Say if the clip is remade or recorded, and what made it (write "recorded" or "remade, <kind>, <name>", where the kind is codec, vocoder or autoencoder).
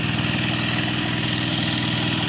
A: recorded